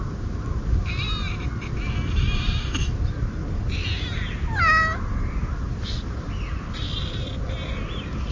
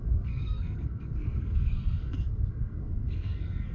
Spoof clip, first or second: second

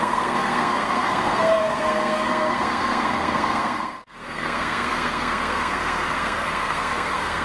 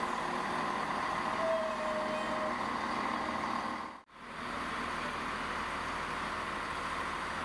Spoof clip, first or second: first